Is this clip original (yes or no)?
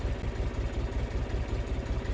yes